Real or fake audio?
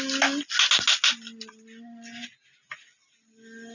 real